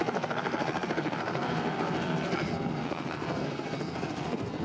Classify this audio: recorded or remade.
remade